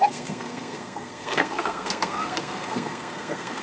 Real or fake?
fake